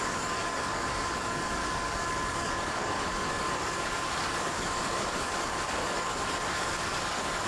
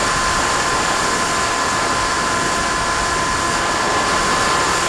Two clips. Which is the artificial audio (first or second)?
first